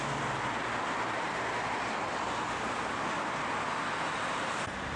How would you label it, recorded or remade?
recorded